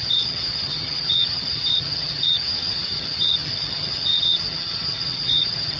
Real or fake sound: fake